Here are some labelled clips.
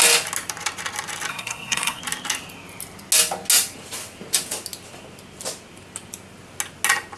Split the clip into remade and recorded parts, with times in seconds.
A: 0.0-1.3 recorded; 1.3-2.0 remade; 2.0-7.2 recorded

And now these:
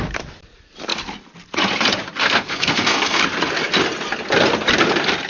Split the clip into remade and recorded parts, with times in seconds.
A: 0.0-2.2 recorded; 2.2-3.2 remade; 3.2-5.3 recorded

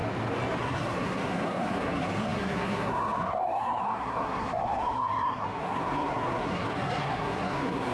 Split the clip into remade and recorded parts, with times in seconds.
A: 0.0-0.6 recorded; 0.6-7.9 remade

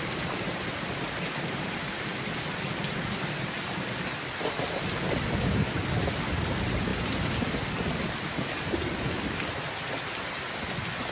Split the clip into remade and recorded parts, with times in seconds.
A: 0.0-11.1 recorded

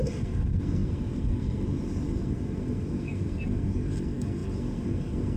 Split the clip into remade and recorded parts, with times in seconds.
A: 0.0-5.4 remade

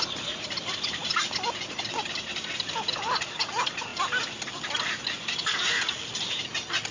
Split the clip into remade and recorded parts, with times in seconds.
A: 0.0-6.9 recorded